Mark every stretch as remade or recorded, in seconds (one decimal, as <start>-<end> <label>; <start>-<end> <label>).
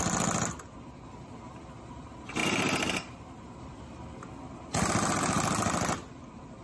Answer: 0.0-6.6 recorded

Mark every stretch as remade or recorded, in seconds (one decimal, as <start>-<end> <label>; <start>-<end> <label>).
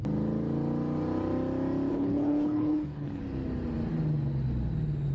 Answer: 0.0-1.9 recorded; 1.9-3.2 remade; 3.2-5.1 recorded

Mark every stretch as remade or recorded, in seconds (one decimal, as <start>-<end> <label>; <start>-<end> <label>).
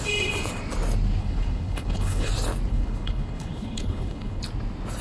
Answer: 0.0-1.2 recorded; 1.2-2.3 remade; 2.3-2.7 recorded; 2.7-4.4 remade; 4.4-5.0 recorded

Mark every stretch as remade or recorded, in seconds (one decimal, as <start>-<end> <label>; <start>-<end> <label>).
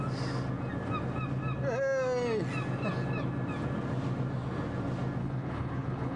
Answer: 0.0-5.2 recorded; 5.2-6.2 remade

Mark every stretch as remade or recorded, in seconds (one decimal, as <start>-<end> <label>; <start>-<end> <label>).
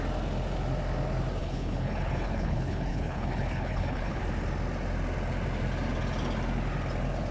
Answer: 0.0-1.4 recorded; 1.4-4.2 remade; 4.2-7.3 recorded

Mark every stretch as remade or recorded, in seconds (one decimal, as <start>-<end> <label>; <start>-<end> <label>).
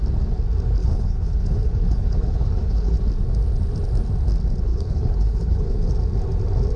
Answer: 0.0-0.8 recorded; 0.8-3.0 remade; 3.0-4.7 recorded; 4.7-5.9 remade; 5.9-6.8 recorded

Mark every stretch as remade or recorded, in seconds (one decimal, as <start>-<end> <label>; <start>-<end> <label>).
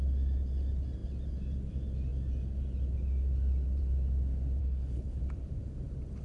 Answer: 0.0-4.6 recorded; 4.6-5.2 remade; 5.2-6.2 recorded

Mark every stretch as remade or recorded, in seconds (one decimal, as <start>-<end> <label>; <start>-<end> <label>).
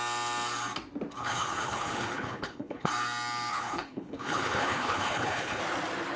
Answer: 0.0-1.2 recorded; 1.2-2.9 remade; 2.9-3.5 recorded; 3.5-5.6 remade; 5.6-6.2 recorded